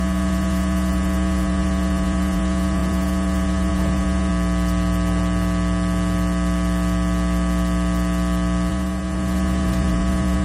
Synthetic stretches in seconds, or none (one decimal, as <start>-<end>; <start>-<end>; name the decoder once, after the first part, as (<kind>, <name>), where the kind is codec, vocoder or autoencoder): 0.0-4.3 (vocoder, Vocos); 8.7-10.4